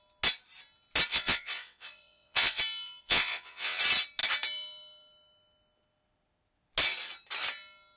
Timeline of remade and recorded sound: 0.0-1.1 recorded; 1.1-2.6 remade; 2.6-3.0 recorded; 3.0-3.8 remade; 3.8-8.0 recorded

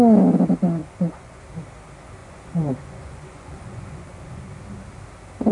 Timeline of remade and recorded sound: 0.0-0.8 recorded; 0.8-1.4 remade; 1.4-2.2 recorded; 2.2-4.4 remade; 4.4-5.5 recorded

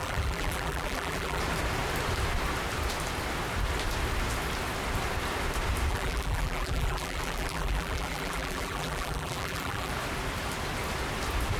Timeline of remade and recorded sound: 0.0-1.4 remade; 1.4-5.9 recorded; 5.9-9.9 remade; 9.9-11.6 recorded

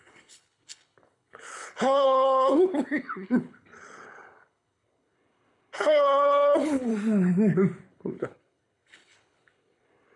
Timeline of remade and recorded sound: 0.0-6.9 remade; 6.9-7.9 recorded; 7.9-10.2 remade

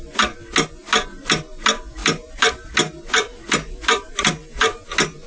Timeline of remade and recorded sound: 0.0-2.0 recorded; 2.0-2.7 remade; 2.7-3.2 recorded; 3.2-4.1 remade; 4.1-5.3 recorded

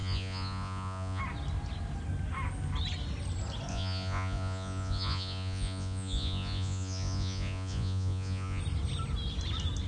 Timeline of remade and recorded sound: 0.0-1.2 remade; 1.2-3.7 recorded; 3.7-8.6 remade; 8.6-9.9 recorded

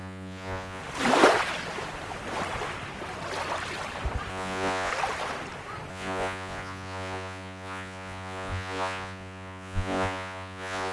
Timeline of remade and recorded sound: 0.0-0.8 remade; 0.8-4.3 recorded; 4.3-4.9 remade; 4.9-5.9 recorded; 5.9-10.9 remade